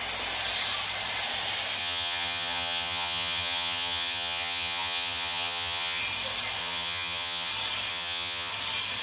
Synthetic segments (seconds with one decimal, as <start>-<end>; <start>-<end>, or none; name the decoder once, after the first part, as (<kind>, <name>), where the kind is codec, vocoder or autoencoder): 1.8-6.0 (vocoder, HiFi-GAN); 6.6-7.5; 7.9-8.5

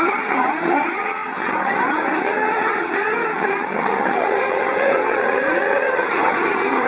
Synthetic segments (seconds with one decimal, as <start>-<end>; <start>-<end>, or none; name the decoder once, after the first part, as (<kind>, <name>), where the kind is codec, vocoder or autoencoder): 0.0-6.9 (vocoder, HiFi-GAN)

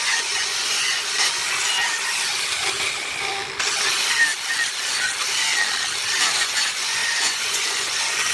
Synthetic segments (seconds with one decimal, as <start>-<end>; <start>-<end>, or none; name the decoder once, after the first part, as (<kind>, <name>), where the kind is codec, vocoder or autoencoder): 0.0-1.4 (vocoder, Vocos); 6.4-8.3

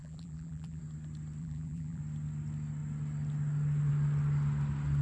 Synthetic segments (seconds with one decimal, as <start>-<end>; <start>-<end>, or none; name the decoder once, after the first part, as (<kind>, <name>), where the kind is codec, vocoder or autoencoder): 0.0-0.8 (vocoder, BigVGAN v2); 1.4-2.0

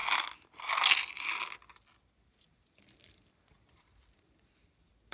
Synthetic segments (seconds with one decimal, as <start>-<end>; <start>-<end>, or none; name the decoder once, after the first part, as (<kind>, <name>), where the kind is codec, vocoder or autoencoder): 2.4-5.1 (vocoder, BigVGAN v2)

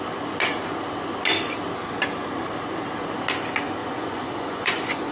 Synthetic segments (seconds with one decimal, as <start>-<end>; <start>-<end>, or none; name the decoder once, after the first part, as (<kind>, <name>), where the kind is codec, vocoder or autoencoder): 3.8-5.1 (vocoder, Vocos)

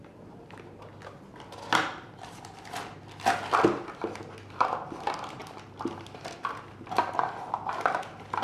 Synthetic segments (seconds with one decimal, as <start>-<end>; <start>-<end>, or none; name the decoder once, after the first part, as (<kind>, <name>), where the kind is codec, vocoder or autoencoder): none